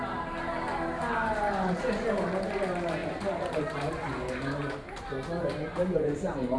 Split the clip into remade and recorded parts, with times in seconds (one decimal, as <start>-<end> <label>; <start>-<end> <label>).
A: 0.0-1.0 remade; 1.0-1.7 recorded; 1.7-4.1 remade; 4.1-5.4 recorded; 5.4-6.6 remade